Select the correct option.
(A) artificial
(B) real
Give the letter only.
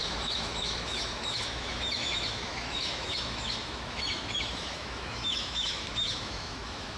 A